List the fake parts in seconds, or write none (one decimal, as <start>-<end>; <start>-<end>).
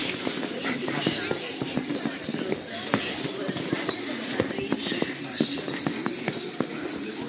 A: none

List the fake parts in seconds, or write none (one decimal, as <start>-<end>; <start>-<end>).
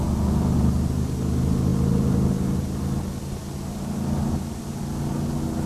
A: none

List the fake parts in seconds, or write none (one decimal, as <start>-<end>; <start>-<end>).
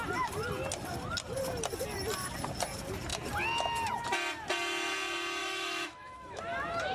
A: 5.4-6.4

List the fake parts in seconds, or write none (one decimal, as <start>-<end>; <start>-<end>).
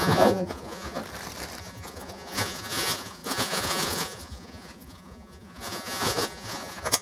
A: 0.0-1.0; 1.6-7.0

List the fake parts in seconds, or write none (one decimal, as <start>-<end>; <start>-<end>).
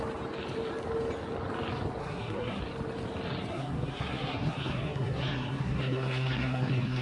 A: 2.0-2.6; 3.5-7.0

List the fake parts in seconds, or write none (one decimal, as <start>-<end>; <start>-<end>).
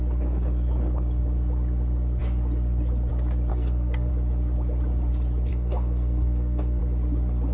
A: 3.5-4.1; 5.5-6.8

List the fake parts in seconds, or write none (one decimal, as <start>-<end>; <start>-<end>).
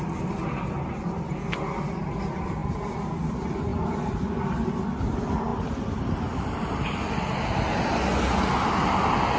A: none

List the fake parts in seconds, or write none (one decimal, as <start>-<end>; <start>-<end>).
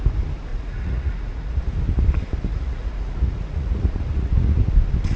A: 0.5-1.6; 2.5-4.6